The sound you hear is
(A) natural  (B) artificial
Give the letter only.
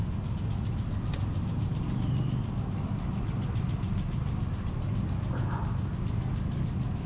A